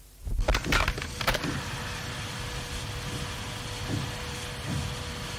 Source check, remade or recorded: recorded